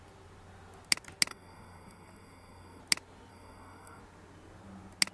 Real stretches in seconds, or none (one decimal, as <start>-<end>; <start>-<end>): 0.0-1.3; 2.8-3.3; 4.0-5.1